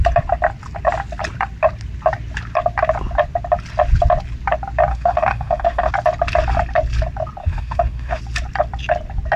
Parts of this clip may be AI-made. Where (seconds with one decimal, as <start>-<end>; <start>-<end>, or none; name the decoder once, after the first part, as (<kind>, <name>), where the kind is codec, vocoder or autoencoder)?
4.9-5.9 (autoencoder, DAC-VAE); 7.4-8.2